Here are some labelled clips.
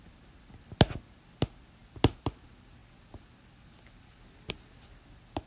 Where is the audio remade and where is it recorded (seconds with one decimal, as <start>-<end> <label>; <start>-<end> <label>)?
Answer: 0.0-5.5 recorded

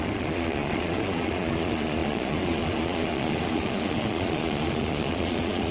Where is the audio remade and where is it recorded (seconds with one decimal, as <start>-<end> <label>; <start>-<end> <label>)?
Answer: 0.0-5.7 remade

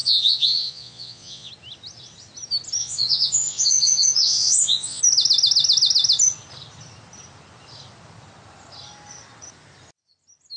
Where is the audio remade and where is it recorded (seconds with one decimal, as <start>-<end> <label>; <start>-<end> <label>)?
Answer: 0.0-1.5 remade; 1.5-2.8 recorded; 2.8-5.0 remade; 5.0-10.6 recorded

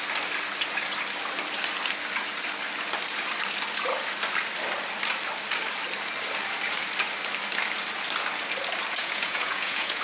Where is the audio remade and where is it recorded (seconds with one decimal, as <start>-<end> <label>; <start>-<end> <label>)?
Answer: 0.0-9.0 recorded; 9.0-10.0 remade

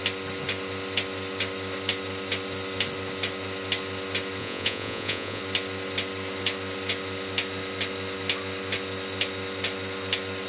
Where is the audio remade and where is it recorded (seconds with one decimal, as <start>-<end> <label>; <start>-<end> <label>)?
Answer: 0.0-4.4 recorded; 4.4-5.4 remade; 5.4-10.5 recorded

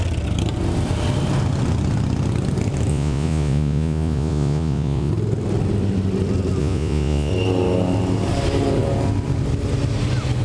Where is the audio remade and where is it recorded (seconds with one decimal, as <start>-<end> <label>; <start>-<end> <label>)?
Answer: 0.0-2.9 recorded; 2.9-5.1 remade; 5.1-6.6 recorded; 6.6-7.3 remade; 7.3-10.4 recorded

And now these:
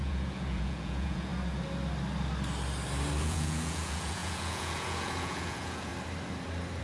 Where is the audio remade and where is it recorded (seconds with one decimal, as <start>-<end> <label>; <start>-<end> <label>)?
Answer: 0.0-1.3 remade; 1.3-3.2 recorded; 3.2-5.9 remade; 5.9-6.8 recorded

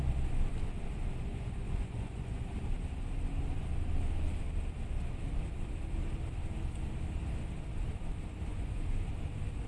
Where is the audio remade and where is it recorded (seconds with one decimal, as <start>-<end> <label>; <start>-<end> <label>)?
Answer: 0.0-1.3 recorded; 1.3-2.4 remade; 2.4-8.5 recorded; 8.5-9.1 remade; 9.1-9.7 recorded